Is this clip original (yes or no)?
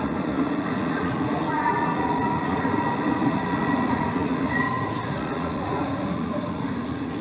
no